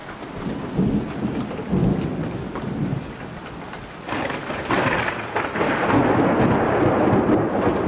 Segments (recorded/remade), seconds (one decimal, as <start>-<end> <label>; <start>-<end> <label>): 0.0-7.9 recorded